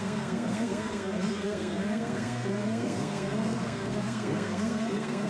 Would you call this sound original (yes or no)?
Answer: no